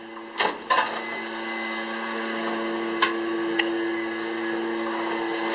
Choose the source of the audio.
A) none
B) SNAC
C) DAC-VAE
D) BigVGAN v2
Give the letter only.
A